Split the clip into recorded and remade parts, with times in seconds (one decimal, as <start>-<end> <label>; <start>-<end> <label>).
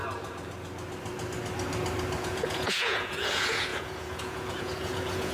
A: 0.0-2.2 recorded; 2.2-5.3 remade